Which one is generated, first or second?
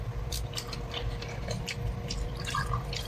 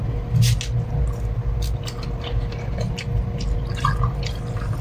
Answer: first